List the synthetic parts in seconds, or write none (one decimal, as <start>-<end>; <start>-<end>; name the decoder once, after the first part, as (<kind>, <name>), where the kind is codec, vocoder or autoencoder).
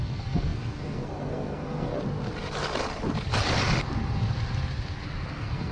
0.0-1.9 (codec, SNAC); 5.3-5.7